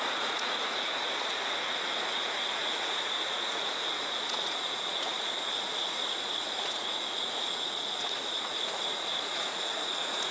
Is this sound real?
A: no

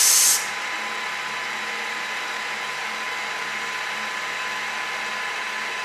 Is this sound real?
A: yes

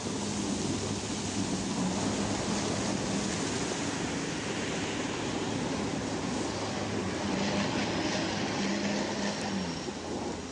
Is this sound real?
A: yes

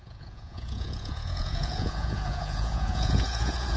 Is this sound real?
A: no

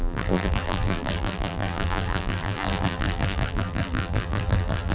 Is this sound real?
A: no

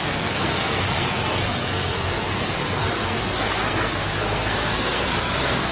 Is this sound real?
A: no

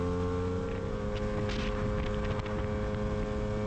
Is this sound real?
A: yes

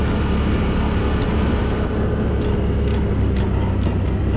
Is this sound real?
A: yes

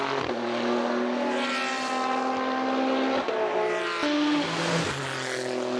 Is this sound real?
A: yes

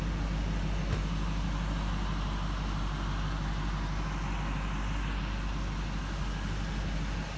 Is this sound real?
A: yes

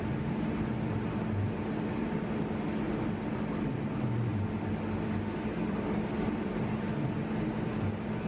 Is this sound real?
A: yes